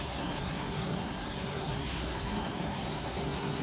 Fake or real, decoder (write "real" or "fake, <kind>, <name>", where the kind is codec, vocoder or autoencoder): fake, codec, SNAC